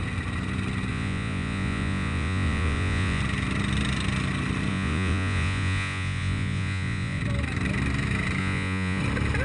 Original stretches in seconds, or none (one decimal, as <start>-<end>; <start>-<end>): 0.0-0.9; 3.2-4.7; 7.2-8.4; 9.0-9.4